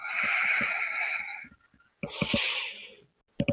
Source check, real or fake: real